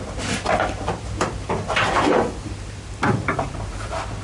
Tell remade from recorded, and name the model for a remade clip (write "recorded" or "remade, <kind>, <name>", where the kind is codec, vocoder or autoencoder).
remade, vocoder, BigVGAN v2